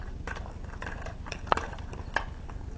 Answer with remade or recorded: recorded